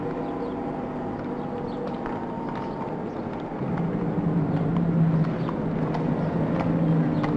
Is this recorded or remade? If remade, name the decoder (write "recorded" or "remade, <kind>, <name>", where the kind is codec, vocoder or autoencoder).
recorded